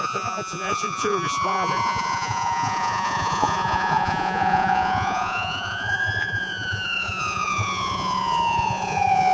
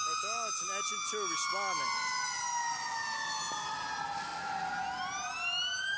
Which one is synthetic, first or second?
first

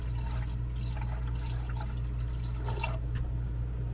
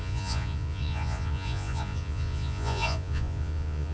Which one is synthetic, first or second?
second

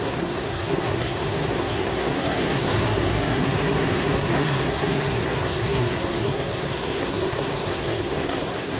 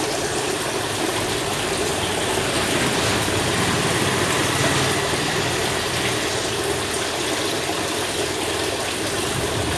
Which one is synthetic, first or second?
first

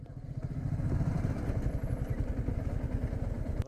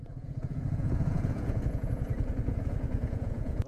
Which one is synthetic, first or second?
second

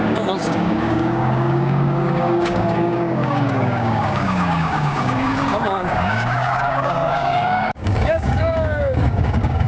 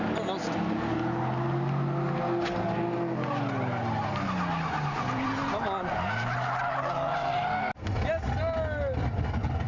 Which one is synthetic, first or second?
first